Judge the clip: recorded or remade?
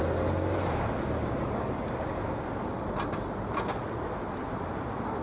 recorded